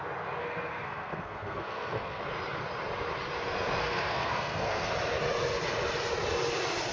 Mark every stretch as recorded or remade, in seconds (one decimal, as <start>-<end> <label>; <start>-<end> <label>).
0.0-0.4 recorded; 0.4-2.2 remade; 2.2-3.8 recorded; 3.8-4.9 remade; 4.9-6.9 recorded